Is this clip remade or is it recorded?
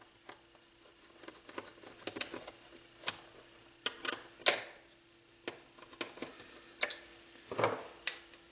recorded